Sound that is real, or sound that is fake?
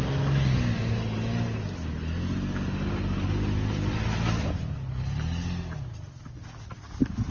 real